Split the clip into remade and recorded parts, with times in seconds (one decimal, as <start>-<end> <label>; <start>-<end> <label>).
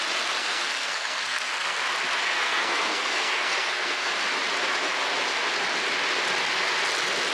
0.0-0.4 recorded; 0.4-1.8 remade; 1.8-2.2 recorded; 2.2-4.1 remade; 4.1-7.3 recorded